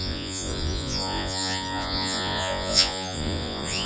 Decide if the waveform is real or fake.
fake